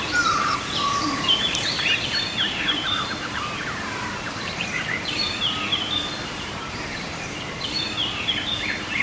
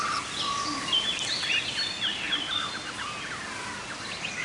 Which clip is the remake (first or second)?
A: first